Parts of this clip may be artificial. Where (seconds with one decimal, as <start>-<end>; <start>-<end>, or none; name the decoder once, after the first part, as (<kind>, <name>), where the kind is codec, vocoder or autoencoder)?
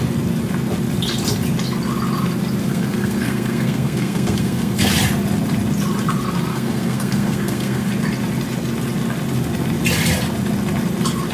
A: 2.6-4.9 (codec, SNAC); 6.5-7.9